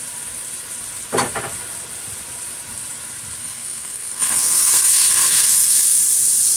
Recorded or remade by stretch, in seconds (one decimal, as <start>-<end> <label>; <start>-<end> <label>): 0.0-3.4 recorded; 3.4-6.0 remade; 6.0-6.6 recorded